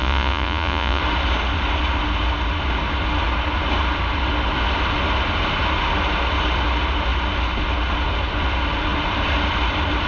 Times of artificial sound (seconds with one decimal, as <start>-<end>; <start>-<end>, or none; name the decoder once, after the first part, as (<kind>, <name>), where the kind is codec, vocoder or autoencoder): 0.0-1.0 (vocoder, Vocos)